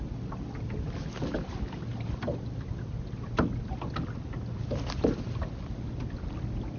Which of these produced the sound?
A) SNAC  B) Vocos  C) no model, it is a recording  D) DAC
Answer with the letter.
C